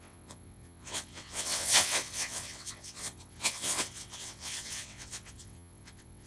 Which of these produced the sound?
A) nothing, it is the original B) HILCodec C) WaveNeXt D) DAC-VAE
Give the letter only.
C